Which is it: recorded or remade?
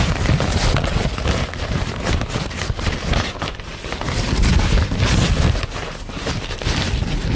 recorded